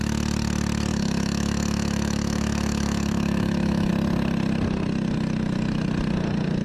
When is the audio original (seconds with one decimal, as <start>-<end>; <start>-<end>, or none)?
0.0-0.9; 3.9-6.6